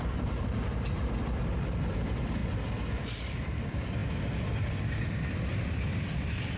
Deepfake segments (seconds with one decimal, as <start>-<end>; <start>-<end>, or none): 0.0-2.4; 2.9-4.0; 5.9-6.6